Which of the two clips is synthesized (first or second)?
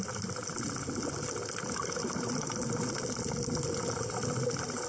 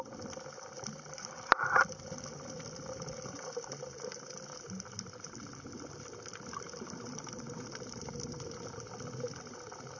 second